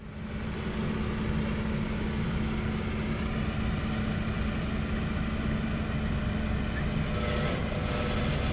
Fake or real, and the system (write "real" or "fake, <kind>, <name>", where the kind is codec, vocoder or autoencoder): real